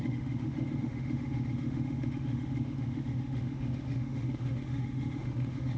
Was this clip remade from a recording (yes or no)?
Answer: yes